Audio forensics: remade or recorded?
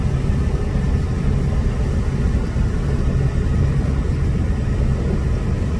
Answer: recorded